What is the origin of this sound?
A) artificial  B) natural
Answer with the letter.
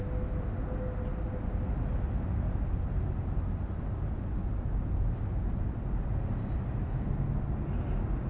B